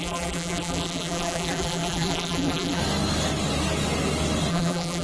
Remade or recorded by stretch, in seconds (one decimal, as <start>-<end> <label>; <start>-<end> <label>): 0.0-2.8 remade; 2.8-4.5 recorded; 4.5-5.0 remade